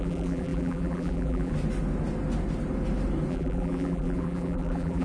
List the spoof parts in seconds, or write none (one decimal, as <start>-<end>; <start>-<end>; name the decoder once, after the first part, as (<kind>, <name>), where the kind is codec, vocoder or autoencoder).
0.0-1.5 (vocoder, BigVGAN v2); 3.3-5.0